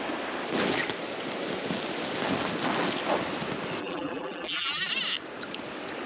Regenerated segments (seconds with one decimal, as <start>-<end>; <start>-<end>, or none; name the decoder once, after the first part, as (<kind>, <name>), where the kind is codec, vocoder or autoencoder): 3.8-4.9 (vocoder, BigVGAN v2)